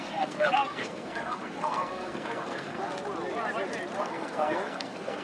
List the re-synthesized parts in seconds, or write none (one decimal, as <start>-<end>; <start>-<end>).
0.0-2.8; 4.0-5.2